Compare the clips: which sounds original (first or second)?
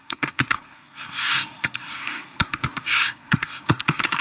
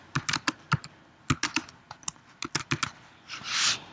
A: second